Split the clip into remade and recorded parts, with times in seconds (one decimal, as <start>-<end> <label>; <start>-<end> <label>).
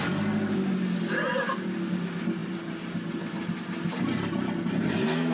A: 0.0-5.3 recorded